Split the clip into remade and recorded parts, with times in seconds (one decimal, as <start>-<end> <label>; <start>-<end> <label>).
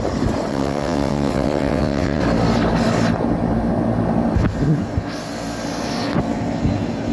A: 0.0-0.5 recorded; 0.5-2.2 remade; 2.2-7.1 recorded